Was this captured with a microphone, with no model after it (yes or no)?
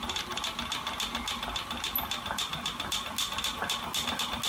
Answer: yes